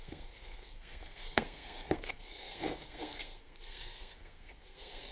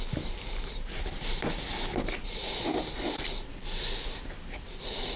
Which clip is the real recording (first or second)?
second